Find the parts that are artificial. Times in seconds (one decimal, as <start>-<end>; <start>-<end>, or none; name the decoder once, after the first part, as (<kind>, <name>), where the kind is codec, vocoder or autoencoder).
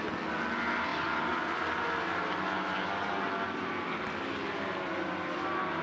none